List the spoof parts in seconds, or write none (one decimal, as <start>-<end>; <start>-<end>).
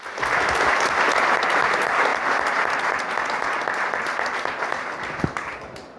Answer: none